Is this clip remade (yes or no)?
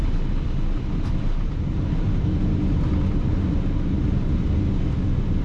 no